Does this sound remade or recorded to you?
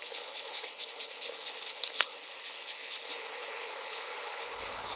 remade